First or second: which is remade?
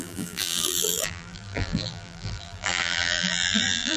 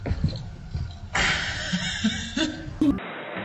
first